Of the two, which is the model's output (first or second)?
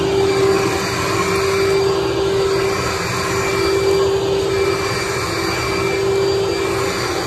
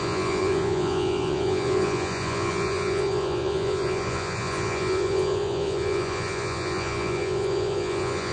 second